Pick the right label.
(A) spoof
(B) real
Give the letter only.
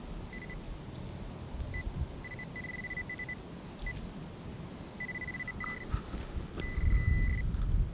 B